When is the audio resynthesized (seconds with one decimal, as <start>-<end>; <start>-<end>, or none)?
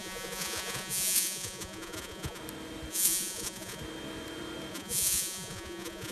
0.0-2.4; 2.9-3.8; 4.7-6.1